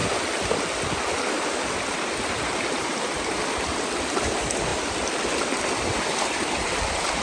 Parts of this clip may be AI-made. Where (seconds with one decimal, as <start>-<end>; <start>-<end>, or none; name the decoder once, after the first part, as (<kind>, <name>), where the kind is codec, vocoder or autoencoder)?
2.1-4.7 (vocoder, BigVGAN v2); 5.6-7.2